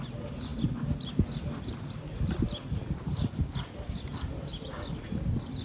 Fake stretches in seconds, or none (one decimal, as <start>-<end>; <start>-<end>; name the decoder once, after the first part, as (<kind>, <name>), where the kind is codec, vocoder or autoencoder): none